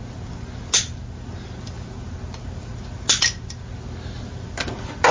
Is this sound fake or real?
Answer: real